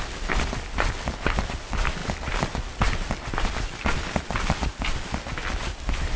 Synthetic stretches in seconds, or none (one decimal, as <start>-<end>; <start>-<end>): none